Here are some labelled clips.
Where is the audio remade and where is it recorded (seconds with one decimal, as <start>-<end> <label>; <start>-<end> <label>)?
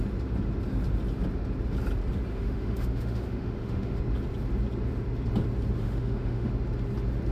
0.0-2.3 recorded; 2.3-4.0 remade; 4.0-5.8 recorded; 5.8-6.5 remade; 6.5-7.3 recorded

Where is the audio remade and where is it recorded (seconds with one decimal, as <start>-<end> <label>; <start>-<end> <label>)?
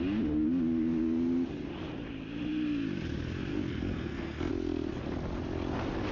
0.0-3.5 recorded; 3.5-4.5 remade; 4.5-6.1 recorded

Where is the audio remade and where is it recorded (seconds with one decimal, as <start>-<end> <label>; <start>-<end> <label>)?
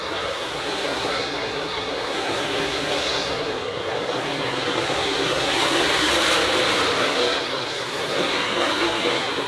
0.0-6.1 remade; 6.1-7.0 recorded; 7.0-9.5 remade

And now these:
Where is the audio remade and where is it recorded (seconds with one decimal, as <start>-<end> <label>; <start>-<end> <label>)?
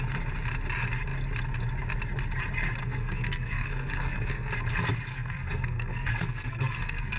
0.0-2.8 recorded; 2.8-4.5 remade; 4.5-5.1 recorded; 5.1-7.2 remade